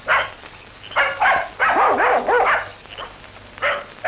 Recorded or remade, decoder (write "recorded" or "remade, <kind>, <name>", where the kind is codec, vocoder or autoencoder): recorded